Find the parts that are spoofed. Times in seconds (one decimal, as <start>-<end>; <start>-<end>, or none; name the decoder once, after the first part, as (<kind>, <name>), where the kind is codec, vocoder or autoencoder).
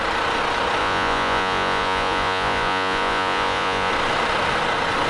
0.8-3.9 (vocoder, Vocos)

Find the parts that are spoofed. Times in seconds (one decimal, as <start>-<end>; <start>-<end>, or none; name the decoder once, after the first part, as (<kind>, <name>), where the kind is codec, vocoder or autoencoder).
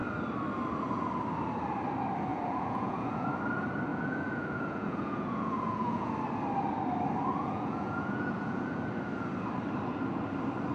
2.3-3.3 (vocoder, Vocos); 3.9-6.1; 7.3-8.8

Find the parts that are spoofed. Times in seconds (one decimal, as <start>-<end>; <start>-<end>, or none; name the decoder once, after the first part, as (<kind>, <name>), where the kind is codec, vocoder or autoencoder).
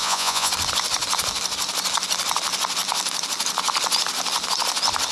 0.0-0.5 (vocoder, Vocos)